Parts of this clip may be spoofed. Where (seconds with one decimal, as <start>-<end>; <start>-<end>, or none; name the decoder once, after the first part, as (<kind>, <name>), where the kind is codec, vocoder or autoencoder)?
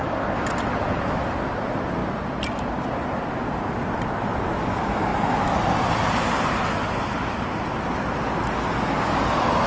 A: 2.0-3.5 (vocoder, BigVGAN v2)